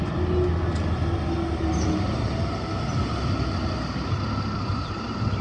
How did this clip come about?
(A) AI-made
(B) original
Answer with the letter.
B